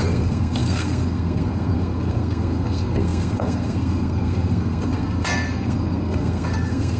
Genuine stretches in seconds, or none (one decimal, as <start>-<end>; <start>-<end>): none